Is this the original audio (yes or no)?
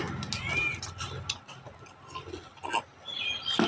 yes